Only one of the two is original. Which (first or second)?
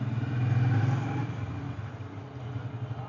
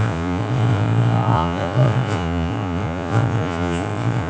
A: first